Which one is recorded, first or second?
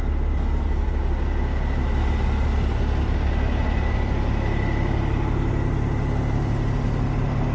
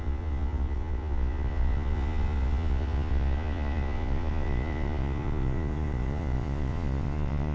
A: first